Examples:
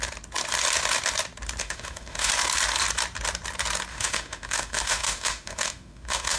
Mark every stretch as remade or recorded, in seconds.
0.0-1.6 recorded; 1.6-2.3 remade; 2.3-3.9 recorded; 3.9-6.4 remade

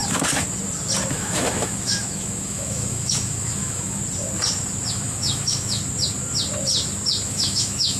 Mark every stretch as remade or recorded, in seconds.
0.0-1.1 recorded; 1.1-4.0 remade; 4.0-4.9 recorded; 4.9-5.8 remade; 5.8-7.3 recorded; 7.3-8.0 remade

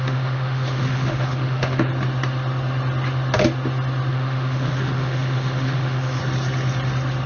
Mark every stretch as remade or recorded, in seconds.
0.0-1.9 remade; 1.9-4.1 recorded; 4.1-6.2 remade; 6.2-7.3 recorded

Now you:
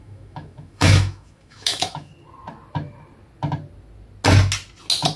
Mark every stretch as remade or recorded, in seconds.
0.0-2.1 remade; 2.1-5.2 recorded